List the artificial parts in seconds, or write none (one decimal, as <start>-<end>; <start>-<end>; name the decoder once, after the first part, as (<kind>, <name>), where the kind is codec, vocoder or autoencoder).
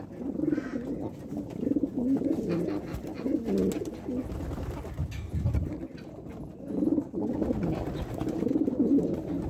none